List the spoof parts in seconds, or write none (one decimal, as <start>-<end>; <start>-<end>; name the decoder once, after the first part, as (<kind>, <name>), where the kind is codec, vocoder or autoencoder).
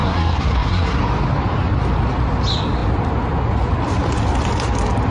0.0-1.0 (codec, SNAC)